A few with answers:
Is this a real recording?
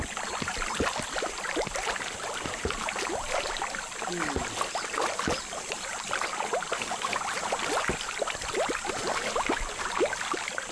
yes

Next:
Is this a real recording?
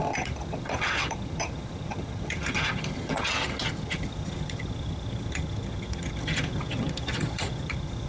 no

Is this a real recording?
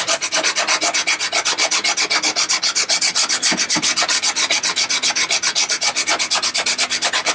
yes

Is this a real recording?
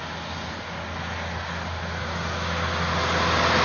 yes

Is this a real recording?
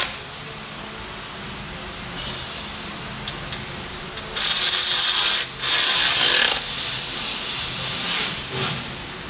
yes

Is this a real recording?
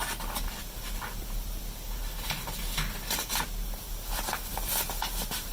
yes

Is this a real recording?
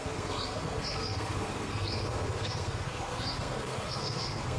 no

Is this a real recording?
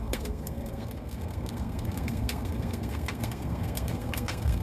no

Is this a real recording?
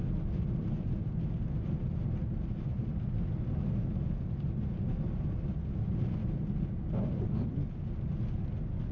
yes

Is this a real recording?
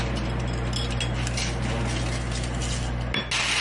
yes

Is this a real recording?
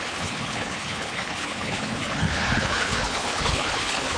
no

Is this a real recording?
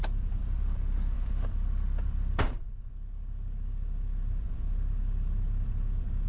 no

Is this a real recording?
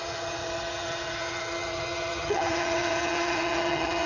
no